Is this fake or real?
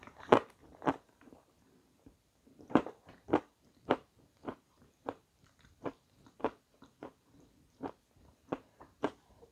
fake